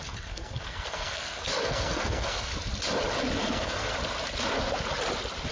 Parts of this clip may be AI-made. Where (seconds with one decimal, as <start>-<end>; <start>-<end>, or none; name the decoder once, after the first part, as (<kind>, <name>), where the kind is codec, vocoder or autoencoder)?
0.0-2.5 (codec, SNAC); 3.4-3.9